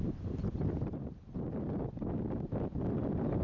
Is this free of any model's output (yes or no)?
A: yes